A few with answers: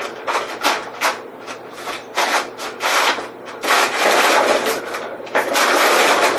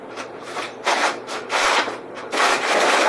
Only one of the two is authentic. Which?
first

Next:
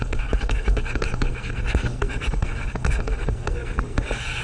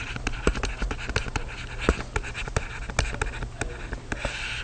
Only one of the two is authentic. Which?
second